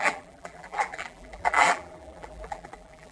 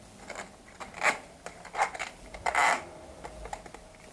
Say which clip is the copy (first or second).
first